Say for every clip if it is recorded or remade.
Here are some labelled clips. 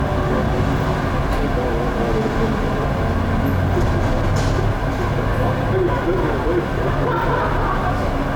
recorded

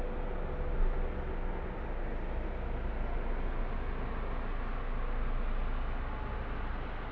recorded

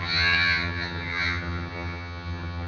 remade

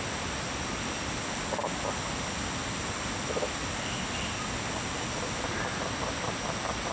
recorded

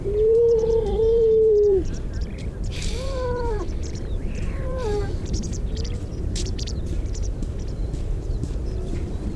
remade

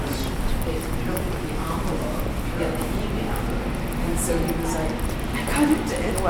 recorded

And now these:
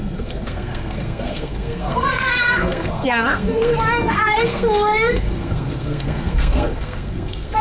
remade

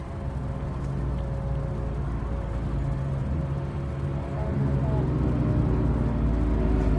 recorded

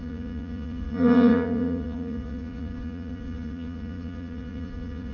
remade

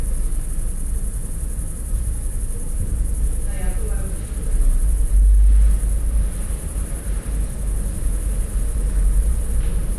recorded